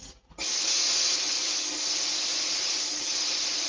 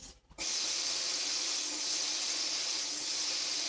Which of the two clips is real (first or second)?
first